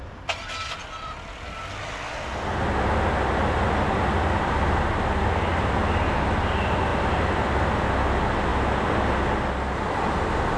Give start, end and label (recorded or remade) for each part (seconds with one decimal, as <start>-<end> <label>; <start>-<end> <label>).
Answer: 0.0-10.6 recorded